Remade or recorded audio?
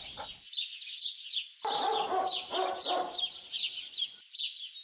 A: recorded